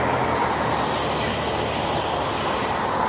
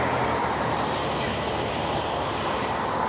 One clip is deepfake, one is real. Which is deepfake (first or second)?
second